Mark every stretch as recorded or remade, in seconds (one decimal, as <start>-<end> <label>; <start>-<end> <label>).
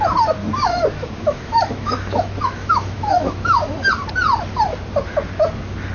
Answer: 0.0-0.4 recorded; 0.4-3.9 remade; 3.9-5.9 recorded